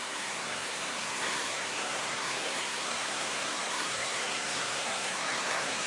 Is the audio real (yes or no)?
no